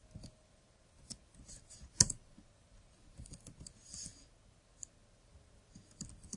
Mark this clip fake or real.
real